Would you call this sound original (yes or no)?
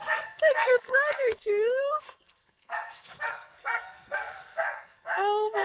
no